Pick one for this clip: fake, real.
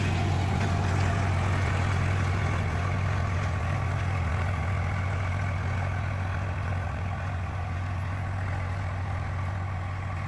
fake